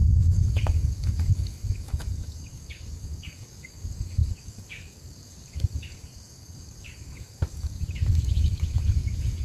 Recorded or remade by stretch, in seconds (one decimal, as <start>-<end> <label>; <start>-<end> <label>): 0.0-9.4 remade